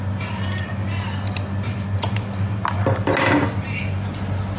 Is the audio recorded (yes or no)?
yes